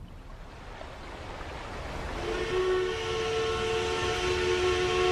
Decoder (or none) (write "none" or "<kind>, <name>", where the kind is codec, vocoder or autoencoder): none